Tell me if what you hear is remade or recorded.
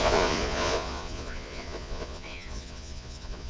remade